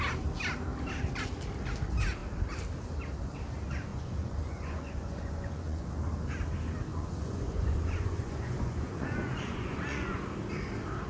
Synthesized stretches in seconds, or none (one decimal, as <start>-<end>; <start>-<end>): 3.9-5.9; 6.9-10.2